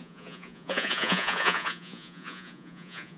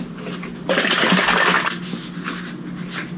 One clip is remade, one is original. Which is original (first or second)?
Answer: second